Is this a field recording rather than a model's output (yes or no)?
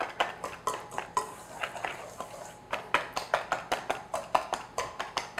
yes